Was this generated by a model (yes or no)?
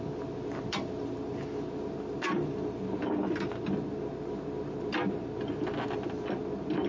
no